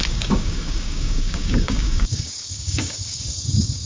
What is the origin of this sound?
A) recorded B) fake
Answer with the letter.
B